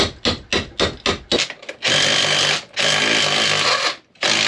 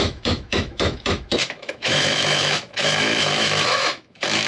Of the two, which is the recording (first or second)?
first